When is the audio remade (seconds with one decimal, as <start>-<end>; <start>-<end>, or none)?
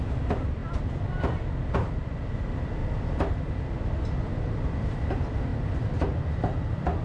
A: 0.0-2.8; 4.2-5.5; 6.3-7.0